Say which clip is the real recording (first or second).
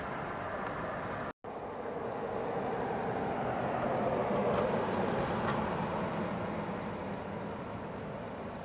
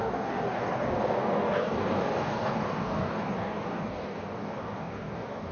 first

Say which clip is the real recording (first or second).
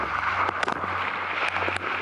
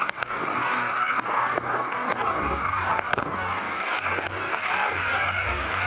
first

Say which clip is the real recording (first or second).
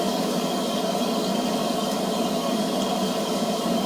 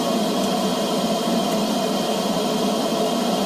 second